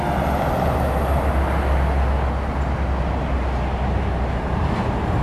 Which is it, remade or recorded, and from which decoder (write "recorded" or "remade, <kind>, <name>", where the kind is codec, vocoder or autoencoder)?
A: recorded